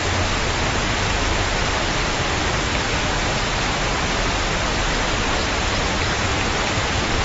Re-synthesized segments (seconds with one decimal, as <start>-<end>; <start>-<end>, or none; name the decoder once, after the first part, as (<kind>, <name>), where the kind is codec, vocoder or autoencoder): 6.3-7.2 (vocoder, BigVGAN v2)